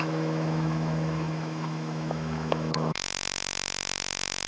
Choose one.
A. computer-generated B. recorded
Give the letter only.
A